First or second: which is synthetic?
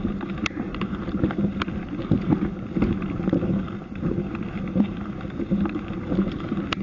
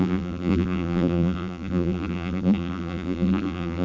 second